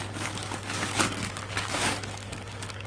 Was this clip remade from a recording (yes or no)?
yes